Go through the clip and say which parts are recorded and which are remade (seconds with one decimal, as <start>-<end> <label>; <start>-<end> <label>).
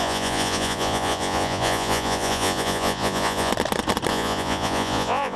0.0-3.5 remade; 3.5-4.1 recorded; 4.1-5.4 remade